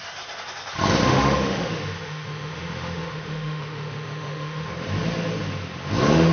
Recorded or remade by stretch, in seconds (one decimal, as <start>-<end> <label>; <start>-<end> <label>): 0.0-1.0 recorded; 1.0-4.7 remade; 4.7-6.3 recorded